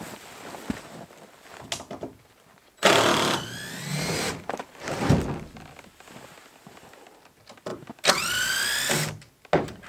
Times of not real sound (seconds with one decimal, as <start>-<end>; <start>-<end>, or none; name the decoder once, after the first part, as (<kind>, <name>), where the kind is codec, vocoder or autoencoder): 3.9-5.1 (vocoder, BigVGAN v2)